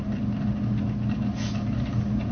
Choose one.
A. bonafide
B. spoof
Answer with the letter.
A